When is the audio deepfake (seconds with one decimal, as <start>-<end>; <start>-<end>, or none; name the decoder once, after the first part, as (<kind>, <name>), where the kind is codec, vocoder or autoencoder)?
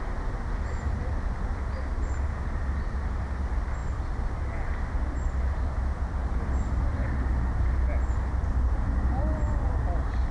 6.2-7.1 (vocoder, BigVGAN v2)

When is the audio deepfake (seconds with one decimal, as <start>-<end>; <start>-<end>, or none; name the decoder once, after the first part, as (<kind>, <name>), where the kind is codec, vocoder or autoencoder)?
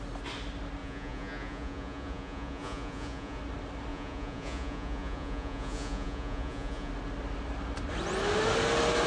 0.8-3.4 (vocoder, Vocos); 3.9-6.9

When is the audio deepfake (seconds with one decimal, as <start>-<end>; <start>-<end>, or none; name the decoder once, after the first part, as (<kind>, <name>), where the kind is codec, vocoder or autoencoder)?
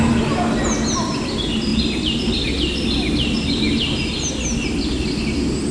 none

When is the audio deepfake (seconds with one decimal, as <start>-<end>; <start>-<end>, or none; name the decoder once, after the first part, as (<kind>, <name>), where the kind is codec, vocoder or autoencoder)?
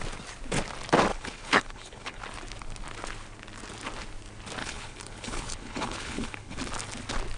1.1-2.2 (codec, HILCodec); 4.6-6.6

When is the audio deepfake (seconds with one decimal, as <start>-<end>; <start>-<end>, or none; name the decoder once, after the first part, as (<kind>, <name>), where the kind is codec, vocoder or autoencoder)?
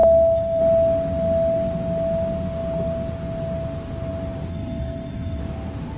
0.0-0.6 (codec, SNAC); 4.5-5.4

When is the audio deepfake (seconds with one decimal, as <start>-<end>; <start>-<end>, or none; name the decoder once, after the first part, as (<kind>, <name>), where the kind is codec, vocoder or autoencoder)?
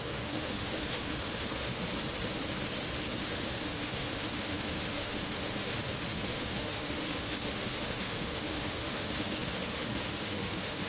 0.0-1.8 (autoencoder, DAC-VAE); 3.2-10.9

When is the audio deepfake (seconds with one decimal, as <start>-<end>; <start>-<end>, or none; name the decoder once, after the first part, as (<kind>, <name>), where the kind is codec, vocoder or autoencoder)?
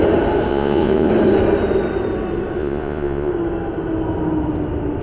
0.5-1.1 (vocoder, Vocos); 2.6-3.3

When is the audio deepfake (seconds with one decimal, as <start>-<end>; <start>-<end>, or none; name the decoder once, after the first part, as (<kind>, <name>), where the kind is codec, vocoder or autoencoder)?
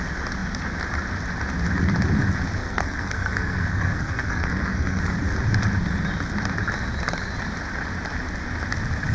2.6-5.0 (codec, SNAC)